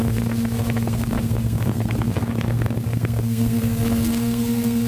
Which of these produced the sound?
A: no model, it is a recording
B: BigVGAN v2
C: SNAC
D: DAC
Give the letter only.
C